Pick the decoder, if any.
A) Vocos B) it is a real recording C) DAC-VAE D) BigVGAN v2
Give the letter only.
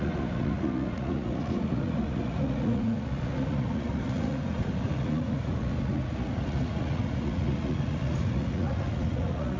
A